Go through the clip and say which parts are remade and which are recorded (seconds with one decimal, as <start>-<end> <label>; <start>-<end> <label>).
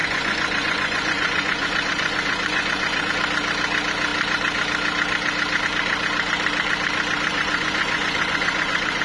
0.0-3.1 remade; 3.1-7.3 recorded; 7.3-9.0 remade